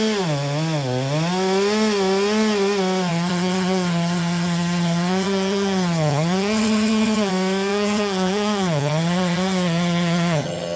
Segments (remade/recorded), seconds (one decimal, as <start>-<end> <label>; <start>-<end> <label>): 0.0-3.1 recorded; 3.1-7.3 remade; 7.3-7.7 recorded; 7.7-10.8 remade

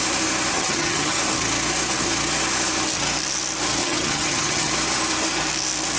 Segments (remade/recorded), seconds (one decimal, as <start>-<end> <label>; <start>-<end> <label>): 0.0-0.5 recorded; 0.5-1.2 remade; 1.2-3.8 recorded; 3.8-4.7 remade; 4.7-6.0 recorded

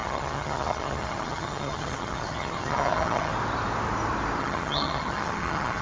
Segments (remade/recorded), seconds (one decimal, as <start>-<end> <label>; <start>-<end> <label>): 0.0-3.3 remade; 3.3-4.4 recorded; 4.4-5.8 remade

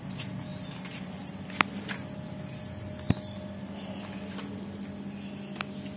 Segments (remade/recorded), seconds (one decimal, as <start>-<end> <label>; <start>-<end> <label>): 0.0-6.0 recorded

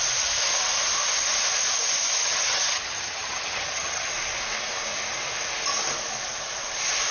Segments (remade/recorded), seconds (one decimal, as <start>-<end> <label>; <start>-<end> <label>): 0.0-2.2 recorded; 2.2-4.1 remade; 4.1-7.1 recorded